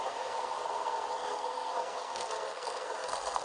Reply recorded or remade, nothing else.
remade